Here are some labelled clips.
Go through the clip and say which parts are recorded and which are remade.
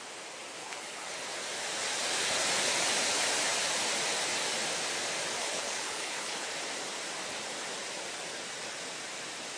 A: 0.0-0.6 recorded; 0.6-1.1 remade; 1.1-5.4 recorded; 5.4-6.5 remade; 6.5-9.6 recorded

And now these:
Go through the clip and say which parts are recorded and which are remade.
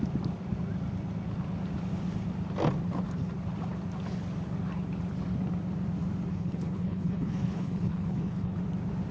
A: 0.0-6.3 recorded; 6.3-8.6 remade; 8.6-9.1 recorded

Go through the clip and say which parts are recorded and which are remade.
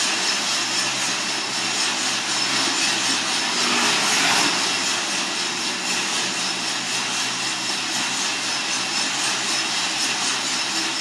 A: 0.0-11.0 recorded